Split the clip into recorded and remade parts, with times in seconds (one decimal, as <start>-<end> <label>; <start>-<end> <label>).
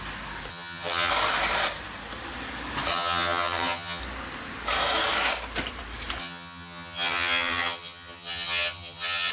0.0-0.5 recorded; 0.5-1.1 remade; 1.1-2.9 recorded; 2.9-4.0 remade; 4.0-6.2 recorded; 6.2-9.3 remade